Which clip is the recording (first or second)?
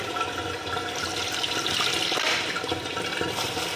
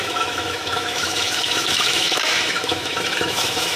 first